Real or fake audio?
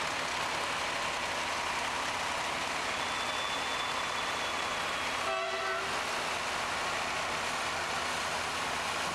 real